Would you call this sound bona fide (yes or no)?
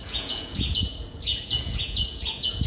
no